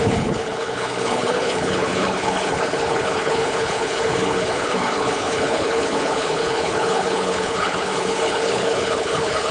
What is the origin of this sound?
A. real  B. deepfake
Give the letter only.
B